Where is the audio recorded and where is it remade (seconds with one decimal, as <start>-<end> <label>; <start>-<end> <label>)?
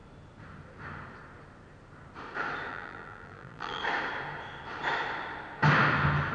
0.0-2.7 recorded; 2.7-3.8 remade; 3.8-6.3 recorded